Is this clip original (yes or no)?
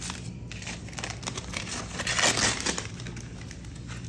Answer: yes